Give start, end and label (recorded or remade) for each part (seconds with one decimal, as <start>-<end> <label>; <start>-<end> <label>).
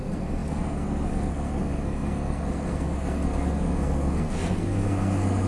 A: 0.0-5.5 remade